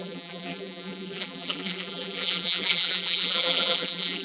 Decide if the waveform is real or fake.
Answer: fake